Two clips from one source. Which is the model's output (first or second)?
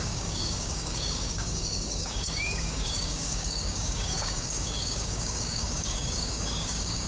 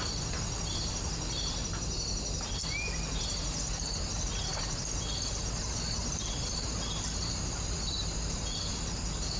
first